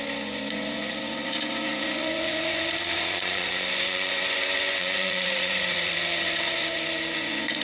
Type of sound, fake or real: fake